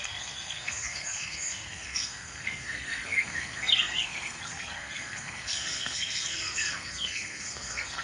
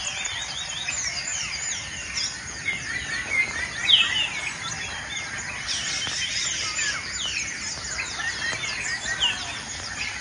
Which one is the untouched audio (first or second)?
second